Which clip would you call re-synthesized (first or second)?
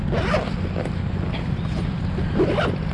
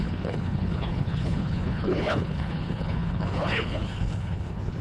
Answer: second